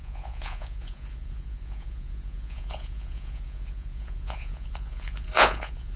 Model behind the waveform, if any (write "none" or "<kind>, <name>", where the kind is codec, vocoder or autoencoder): vocoder, Vocos